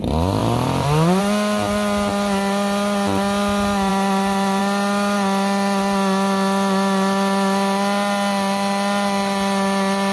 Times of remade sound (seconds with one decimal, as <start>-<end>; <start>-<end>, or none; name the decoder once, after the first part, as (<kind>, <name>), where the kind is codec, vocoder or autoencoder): 0.4-1.2 (vocoder, BigVGAN v2); 3.9-4.6